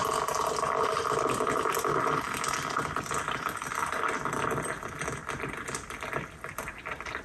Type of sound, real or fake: fake